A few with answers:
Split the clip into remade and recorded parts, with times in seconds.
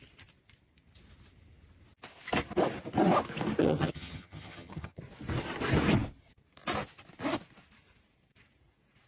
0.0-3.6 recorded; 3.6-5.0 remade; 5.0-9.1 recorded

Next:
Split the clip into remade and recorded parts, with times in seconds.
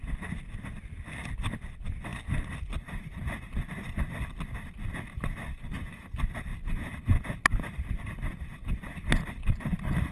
0.0-6.5 recorded; 6.5-8.0 remade; 8.0-10.1 recorded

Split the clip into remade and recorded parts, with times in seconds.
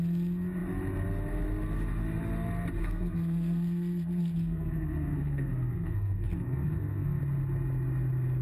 0.0-2.8 recorded; 2.8-7.2 remade; 7.2-8.4 recorded